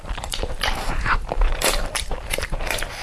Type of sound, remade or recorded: remade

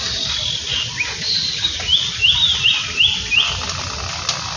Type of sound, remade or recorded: recorded